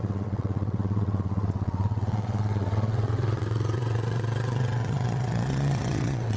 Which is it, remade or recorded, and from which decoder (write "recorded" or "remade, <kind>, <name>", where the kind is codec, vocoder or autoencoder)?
remade, vocoder, WaveNeXt